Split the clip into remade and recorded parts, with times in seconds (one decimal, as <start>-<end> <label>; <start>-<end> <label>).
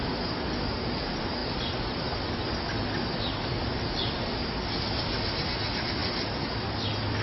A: 0.0-7.2 recorded